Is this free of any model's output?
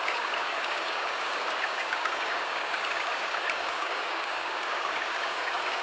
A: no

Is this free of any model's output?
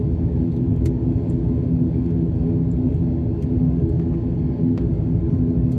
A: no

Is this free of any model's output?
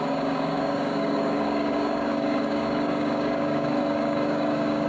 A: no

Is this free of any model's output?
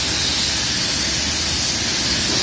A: yes